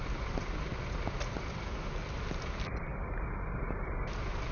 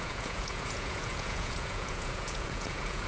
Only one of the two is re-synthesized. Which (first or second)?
second